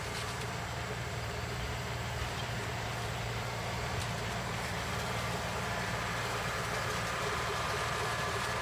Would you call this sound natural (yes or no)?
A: no